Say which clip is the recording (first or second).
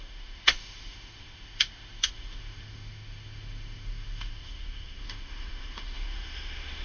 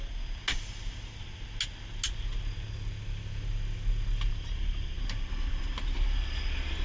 second